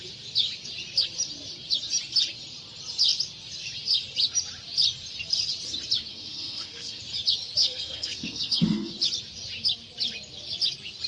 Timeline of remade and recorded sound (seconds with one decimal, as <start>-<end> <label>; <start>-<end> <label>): 0.0-6.1 recorded; 6.1-7.0 remade; 7.0-7.6 recorded; 7.6-8.9 remade; 8.9-11.1 recorded